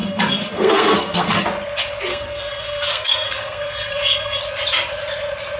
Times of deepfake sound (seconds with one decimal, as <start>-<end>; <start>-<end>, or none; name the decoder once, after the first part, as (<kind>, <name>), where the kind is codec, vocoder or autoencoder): 0.0-1.4 (codec, SNAC); 2.1-4.4

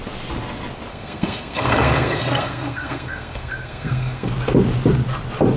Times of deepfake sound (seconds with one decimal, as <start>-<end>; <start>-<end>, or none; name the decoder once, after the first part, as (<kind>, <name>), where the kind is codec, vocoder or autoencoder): 0.9-4.3 (codec, SNAC)

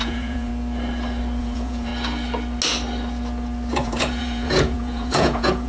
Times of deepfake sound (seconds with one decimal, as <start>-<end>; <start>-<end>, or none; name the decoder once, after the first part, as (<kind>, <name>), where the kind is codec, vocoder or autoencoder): 0.0-0.5 (vocoder, Vocos); 1.4-1.9; 3.7-5.7

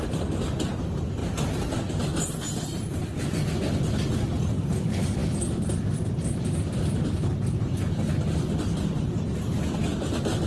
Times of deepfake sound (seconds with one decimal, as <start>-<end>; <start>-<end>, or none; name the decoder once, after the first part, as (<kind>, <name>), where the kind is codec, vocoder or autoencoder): none

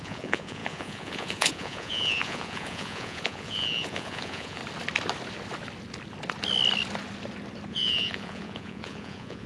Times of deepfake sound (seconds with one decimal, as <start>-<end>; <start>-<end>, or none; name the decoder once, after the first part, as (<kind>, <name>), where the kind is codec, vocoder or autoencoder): 0.0-4.6 (vocoder, Vocos); 7.7-9.5